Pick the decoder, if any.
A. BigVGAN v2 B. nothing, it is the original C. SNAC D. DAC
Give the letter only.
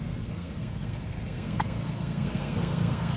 C